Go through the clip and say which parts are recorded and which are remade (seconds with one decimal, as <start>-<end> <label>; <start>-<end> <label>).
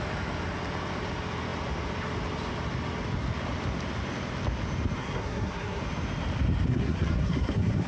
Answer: 0.0-5.0 recorded; 5.0-5.8 remade; 5.8-6.7 recorded; 6.7-7.9 remade